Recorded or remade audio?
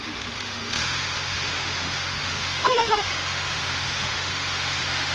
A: remade